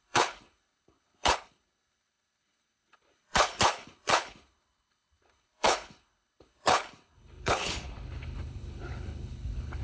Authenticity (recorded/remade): remade